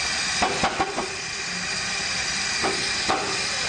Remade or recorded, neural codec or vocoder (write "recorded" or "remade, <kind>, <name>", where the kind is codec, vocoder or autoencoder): recorded